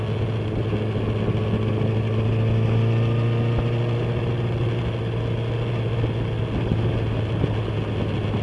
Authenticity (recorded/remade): recorded